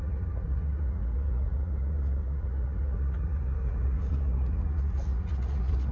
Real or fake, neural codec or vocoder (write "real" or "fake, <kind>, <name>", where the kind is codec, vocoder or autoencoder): fake, vocoder, Vocos